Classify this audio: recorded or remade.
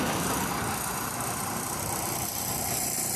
recorded